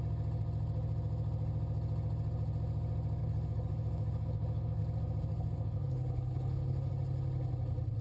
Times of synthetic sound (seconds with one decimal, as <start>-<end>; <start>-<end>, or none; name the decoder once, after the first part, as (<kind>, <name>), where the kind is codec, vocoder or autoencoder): 3.2-4.8 (codec, HILCodec); 5.3-6.9